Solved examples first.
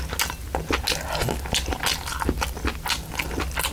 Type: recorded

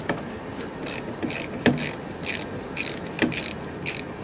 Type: recorded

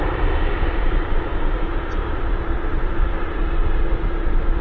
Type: recorded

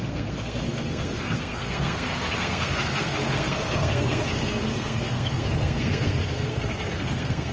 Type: remade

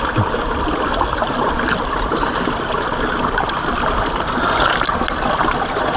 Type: recorded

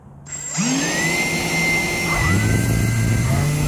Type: recorded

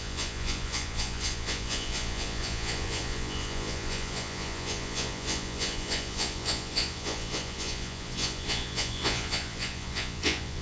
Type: remade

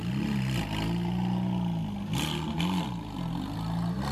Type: recorded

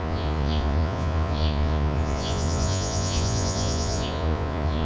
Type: remade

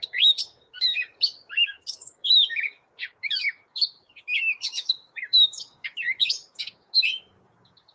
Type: remade